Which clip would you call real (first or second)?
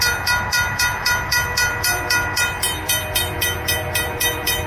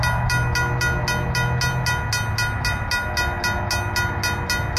second